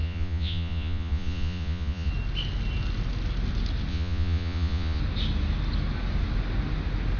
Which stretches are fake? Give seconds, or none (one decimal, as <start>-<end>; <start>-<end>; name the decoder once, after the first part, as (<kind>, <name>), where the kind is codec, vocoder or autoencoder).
0.0-2.1 (vocoder, Vocos); 3.9-5.0